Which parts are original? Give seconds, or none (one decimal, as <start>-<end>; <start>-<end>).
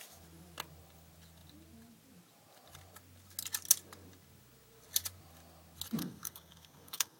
0.0-6.0